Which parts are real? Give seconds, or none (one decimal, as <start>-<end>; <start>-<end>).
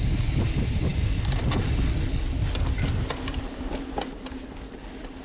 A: 0.0-5.2